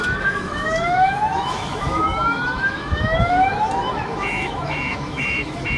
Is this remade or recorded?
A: remade